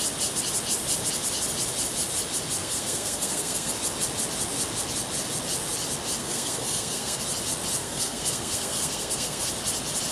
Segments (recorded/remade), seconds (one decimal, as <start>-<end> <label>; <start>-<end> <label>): 0.0-2.6 recorded; 2.6-3.7 remade; 3.7-6.2 recorded; 6.2-7.2 remade; 7.2-7.8 recorded; 7.8-9.5 remade; 9.5-10.1 recorded